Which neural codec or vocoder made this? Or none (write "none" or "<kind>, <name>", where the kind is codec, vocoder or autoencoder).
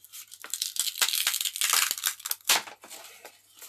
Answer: none